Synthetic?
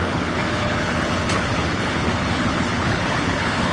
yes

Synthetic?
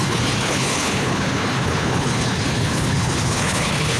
yes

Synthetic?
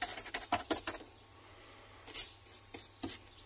no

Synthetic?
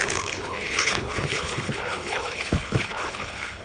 yes